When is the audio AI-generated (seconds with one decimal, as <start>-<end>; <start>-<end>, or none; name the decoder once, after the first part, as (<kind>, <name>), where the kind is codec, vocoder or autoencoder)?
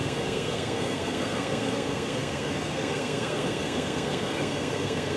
0.0-5.2 (codec, SNAC)